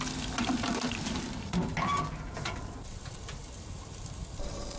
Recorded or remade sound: remade